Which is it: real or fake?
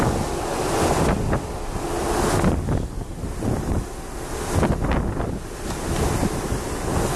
real